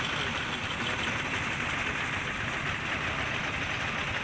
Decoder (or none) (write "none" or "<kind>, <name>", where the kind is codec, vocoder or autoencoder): none